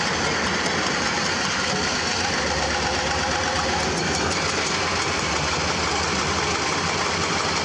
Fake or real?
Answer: real